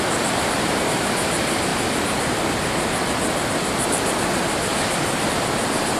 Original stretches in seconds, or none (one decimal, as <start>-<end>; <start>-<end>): 0.0-6.0